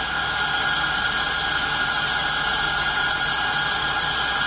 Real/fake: real